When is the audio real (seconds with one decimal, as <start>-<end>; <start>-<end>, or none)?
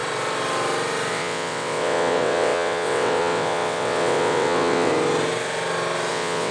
0.0-1.1; 4.9-6.1